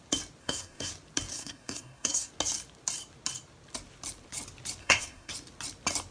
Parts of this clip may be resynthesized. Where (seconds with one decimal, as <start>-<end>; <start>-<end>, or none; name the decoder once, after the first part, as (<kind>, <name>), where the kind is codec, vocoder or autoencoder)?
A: 0.4-0.9 (codec, SNAC); 1.3-2.3; 4.8-5.3